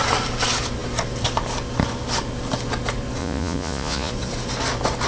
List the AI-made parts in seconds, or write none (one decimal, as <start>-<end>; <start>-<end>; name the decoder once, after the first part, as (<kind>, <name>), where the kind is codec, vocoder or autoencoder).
3.2-4.1 (vocoder, Vocos)